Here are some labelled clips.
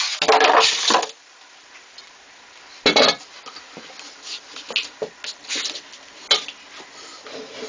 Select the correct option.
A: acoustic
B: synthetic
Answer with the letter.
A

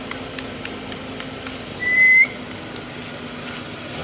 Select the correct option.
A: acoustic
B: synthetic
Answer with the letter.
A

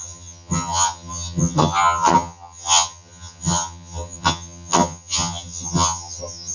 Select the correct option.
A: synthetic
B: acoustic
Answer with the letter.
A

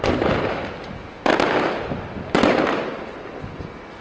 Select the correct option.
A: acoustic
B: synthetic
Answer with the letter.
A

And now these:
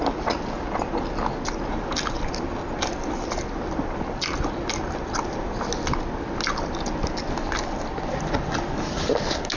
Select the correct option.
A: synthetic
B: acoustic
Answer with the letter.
B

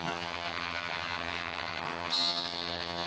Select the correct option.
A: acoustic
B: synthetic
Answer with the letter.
B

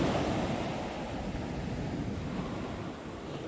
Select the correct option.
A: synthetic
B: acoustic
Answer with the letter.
B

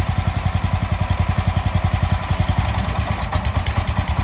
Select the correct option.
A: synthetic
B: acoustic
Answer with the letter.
B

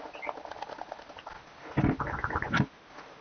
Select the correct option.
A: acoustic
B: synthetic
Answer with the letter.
A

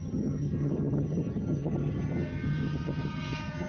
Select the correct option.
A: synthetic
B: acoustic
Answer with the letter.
A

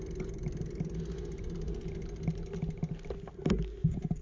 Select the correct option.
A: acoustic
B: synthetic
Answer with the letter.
A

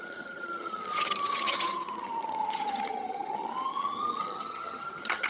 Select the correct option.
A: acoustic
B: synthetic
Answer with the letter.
B